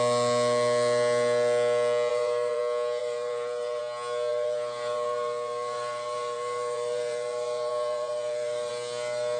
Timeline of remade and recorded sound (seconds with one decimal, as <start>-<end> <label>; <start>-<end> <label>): 0.0-2.1 recorded; 2.1-2.6 remade; 2.6-3.0 recorded; 3.0-3.8 remade; 3.8-4.3 recorded; 4.3-8.7 remade; 8.7-9.4 recorded